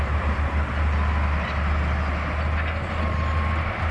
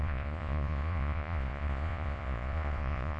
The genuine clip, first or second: first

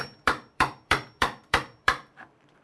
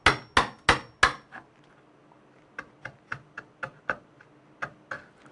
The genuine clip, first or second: second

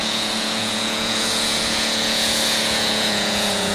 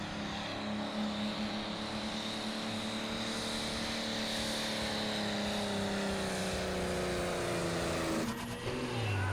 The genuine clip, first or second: second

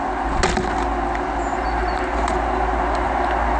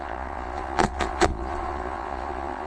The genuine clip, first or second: first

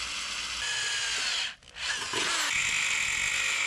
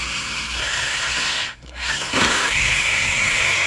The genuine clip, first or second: first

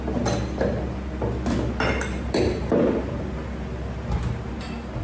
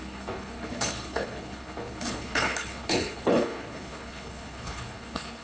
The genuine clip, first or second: first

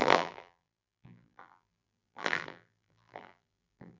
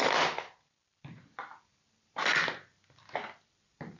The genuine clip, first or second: second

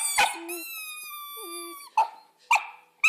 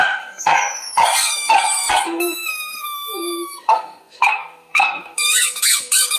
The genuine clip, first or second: first